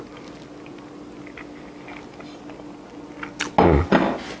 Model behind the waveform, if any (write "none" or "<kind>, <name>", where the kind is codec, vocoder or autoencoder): none